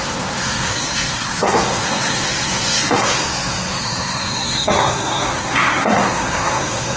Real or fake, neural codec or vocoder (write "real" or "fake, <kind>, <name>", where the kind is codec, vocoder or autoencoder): fake, codec, SNAC